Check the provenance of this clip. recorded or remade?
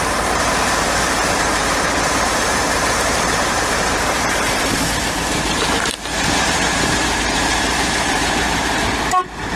remade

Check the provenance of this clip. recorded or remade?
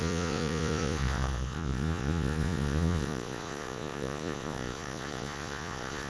remade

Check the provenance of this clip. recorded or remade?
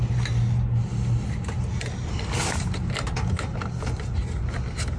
recorded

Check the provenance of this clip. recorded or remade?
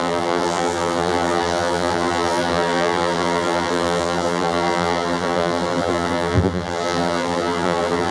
remade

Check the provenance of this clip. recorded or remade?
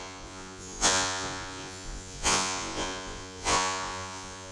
remade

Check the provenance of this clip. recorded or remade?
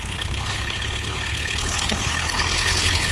remade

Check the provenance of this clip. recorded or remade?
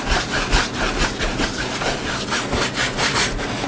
recorded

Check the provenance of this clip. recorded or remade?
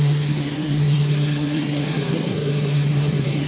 remade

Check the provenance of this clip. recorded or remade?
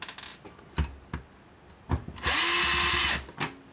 recorded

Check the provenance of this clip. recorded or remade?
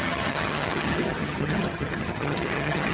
remade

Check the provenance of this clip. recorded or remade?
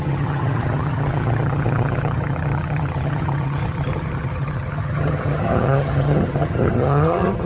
remade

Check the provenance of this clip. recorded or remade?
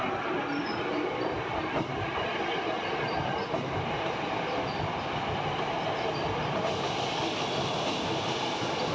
recorded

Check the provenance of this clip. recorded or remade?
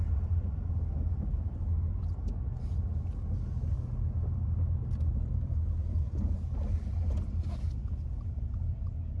recorded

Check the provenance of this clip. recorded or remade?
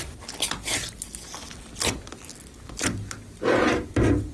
recorded